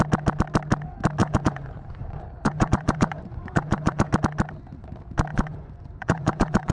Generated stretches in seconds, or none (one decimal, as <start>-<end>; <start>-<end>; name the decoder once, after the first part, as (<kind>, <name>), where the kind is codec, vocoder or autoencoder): 1.2-4.1 (vocoder, Vocos); 5.3-6.7